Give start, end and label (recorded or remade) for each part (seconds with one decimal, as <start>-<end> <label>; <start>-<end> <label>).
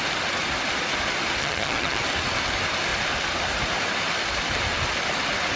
0.0-1.4 recorded; 1.4-2.0 remade; 2.0-5.6 recorded